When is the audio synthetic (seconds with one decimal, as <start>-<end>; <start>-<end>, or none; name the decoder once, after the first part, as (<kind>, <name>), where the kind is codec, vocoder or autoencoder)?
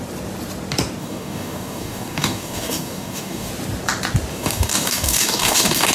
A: 1.0-3.5 (codec, DAC); 4.3-5.9